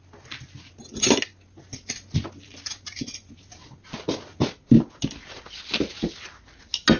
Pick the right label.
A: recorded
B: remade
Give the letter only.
A